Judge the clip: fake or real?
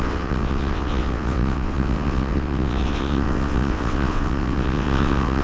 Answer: fake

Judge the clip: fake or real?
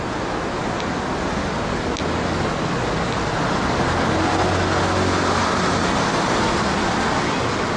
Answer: real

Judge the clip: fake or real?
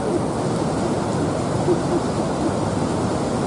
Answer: real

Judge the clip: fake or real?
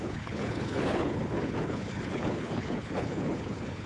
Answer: fake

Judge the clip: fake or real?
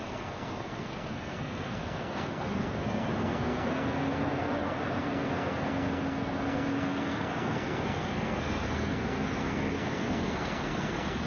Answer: fake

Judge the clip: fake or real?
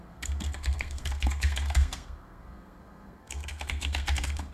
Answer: fake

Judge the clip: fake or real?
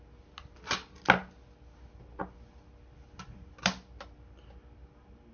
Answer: real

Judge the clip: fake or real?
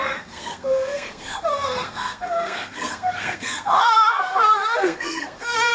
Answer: fake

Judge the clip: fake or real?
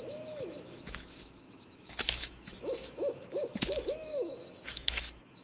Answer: fake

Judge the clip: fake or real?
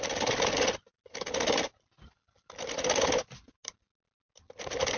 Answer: real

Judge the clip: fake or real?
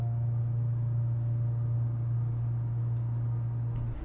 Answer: real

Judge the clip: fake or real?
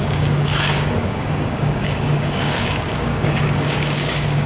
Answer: fake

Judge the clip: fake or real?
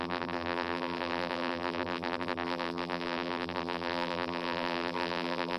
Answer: fake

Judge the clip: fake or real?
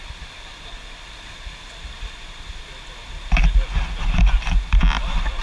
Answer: real